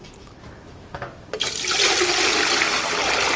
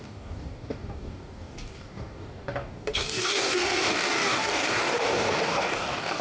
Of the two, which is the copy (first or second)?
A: second